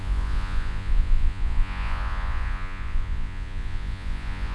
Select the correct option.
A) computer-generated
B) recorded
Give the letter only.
A